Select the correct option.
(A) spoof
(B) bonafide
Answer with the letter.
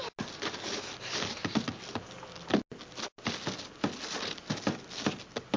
B